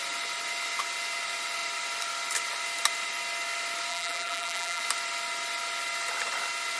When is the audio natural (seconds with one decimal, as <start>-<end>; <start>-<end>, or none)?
0.0-3.9; 4.8-6.8